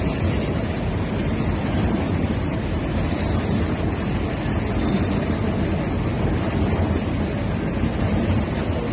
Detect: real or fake real